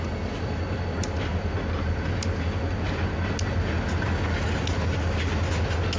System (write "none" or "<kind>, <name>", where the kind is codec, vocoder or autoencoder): none